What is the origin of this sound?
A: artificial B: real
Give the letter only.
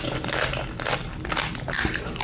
B